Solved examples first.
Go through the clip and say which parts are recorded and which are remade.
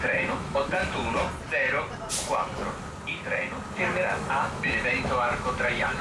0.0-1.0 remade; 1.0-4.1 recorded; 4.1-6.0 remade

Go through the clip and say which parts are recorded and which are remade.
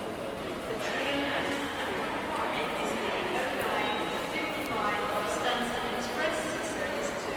0.0-0.9 recorded; 0.9-1.9 remade; 1.9-7.4 recorded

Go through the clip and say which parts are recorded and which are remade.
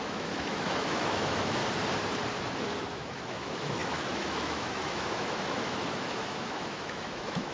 0.0-1.6 remade; 1.6-2.4 recorded; 2.4-7.5 remade